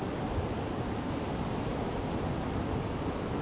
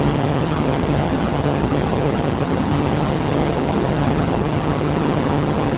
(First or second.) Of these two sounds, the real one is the first